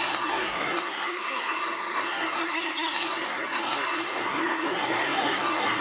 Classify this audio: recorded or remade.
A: remade